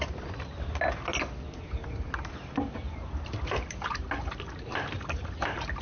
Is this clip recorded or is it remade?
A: recorded